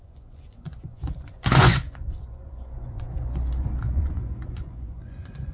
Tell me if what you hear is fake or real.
fake